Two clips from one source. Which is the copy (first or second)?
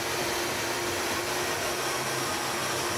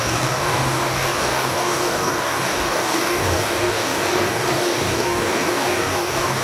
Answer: second